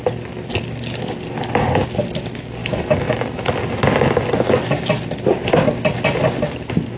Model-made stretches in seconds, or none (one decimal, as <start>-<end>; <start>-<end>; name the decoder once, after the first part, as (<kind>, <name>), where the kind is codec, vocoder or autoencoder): 2.6-3.6 (autoencoder, DAC-VAE)